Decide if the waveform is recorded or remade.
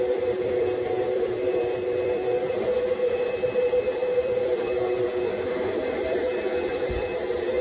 remade